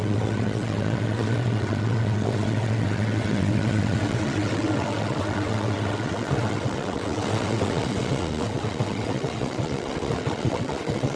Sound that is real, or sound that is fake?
fake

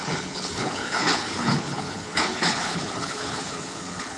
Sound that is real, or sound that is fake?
fake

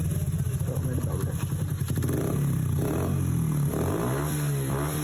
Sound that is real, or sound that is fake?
real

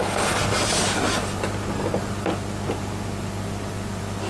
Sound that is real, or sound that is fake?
real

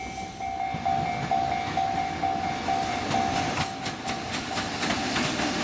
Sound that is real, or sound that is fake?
real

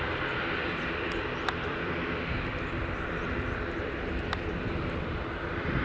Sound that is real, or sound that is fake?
fake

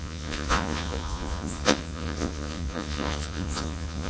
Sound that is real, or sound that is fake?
fake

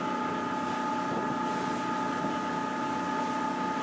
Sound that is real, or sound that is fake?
real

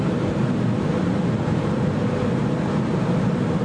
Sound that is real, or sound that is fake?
real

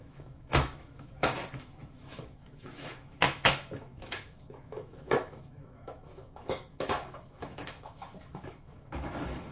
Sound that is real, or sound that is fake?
fake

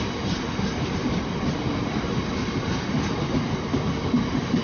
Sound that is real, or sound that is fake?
real